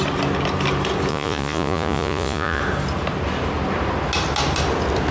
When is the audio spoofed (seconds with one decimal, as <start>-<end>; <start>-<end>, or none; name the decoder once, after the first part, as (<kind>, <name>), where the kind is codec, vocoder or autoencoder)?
1.1-2.6 (vocoder, Vocos)